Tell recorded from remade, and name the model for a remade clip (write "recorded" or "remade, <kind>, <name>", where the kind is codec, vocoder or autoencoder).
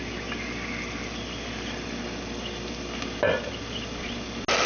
recorded